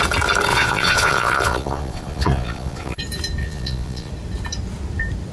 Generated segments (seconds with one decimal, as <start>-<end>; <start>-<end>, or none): 0.5-3.0; 3.4-4.1

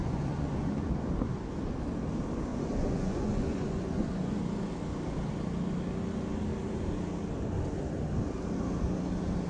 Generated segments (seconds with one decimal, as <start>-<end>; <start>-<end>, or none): 0.0-0.9; 2.5-4.3

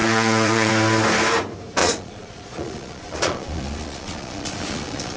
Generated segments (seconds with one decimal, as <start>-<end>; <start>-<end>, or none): 0.0-0.7; 1.8-5.2

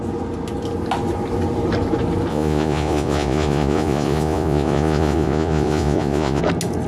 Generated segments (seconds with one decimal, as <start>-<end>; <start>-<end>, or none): 2.3-6.4

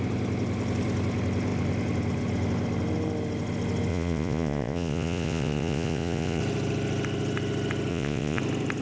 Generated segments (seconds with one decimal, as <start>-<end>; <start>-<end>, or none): 3.9-6.4; 7.9-8.4

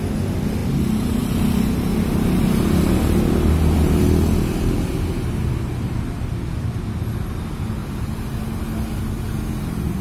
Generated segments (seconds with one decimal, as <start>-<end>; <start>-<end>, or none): none

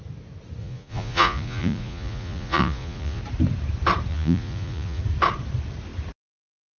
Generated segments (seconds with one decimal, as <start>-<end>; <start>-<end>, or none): 0.6-3.2; 4.1-5.0

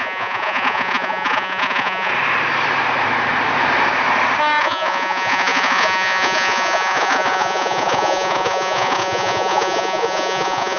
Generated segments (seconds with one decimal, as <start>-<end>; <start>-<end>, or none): 0.0-2.1; 4.6-10.8